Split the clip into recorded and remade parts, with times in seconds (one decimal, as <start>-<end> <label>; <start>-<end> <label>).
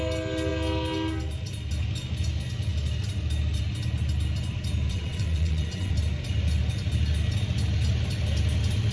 0.0-4.9 recorded; 4.9-5.9 remade; 5.9-8.9 recorded